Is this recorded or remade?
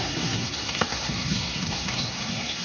remade